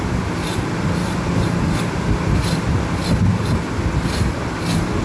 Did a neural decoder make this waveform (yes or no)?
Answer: no